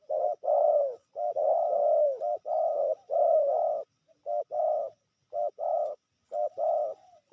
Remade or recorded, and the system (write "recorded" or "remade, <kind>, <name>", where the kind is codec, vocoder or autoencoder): recorded